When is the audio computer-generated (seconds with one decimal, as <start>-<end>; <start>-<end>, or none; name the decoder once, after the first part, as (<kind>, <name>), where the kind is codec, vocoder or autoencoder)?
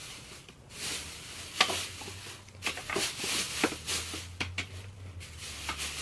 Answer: 0.0-0.8 (vocoder, BigVGAN v2)